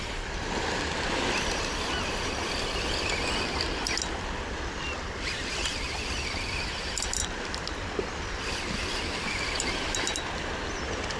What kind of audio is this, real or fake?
real